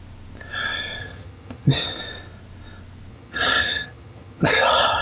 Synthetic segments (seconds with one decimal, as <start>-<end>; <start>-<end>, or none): 1.0-2.0; 3.1-5.0